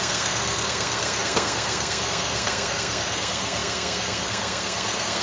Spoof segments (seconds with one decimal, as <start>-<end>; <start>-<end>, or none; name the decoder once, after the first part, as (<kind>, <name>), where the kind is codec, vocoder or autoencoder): 0.0-5.2 (codec, SNAC)